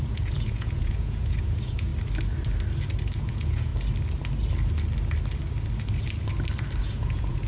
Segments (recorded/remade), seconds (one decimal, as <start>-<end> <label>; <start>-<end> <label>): 0.0-1.9 remade; 1.9-3.2 recorded; 3.2-3.7 remade; 3.7-6.8 recorded; 6.8-7.5 remade